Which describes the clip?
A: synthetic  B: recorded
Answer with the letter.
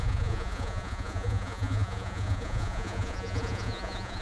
A